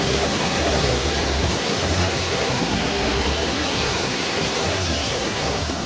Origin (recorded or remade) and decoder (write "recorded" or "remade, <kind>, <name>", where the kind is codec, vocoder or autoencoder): remade, codec, SNAC